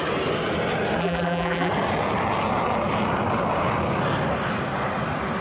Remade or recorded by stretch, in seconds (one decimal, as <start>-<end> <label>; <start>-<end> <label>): 0.0-1.0 recorded; 1.0-1.7 remade; 1.7-5.4 recorded